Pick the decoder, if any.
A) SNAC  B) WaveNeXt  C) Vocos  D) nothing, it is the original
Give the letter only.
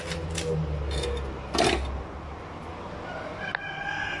D